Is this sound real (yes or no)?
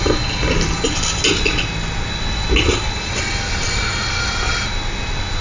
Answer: yes